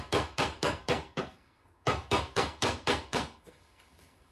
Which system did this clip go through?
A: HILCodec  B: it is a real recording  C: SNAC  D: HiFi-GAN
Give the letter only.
C